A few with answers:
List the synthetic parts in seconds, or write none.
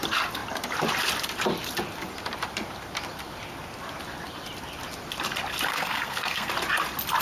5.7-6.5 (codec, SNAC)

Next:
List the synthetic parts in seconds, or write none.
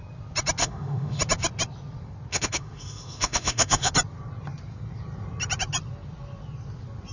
0.6-1.2 (autoencoder, DAC-VAE); 2.3-3.9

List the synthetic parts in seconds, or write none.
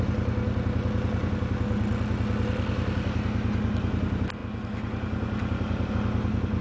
none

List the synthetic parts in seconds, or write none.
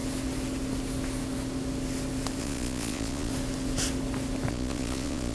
2.4-3.3 (vocoder, Vocos); 4.5-5.3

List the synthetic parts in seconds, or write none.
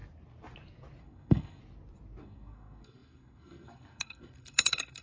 1.0-1.6 (codec, SNAC); 2.2-5.0